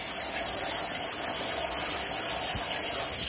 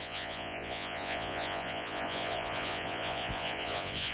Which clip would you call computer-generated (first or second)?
second